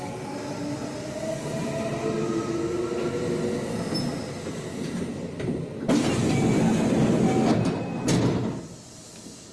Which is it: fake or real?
real